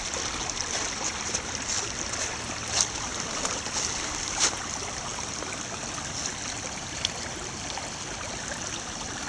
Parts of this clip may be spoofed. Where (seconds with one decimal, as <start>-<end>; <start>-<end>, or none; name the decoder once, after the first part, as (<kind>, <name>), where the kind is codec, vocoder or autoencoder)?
3.1-3.6 (vocoder, BigVGAN v2)

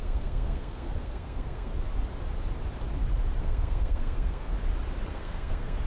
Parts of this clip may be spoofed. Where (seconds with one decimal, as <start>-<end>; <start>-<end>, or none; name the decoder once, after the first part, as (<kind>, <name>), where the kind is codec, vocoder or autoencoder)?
0.0-1.7 (codec, SNAC); 3.4-4.5; 5.1-5.9